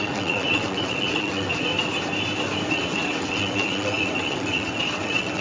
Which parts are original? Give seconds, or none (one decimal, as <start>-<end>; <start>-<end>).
1.7-2.7